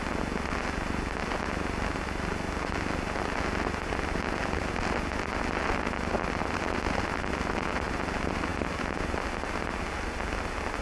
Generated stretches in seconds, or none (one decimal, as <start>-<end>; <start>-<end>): none